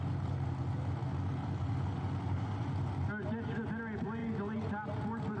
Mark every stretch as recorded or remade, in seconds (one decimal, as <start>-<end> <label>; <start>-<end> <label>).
0.0-5.4 recorded